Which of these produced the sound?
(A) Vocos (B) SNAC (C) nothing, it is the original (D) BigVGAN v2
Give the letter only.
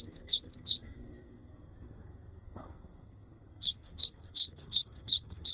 B